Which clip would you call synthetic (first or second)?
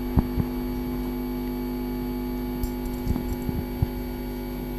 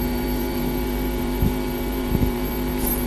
second